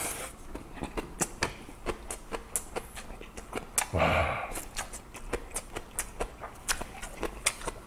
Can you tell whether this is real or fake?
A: real